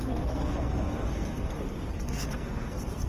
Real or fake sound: fake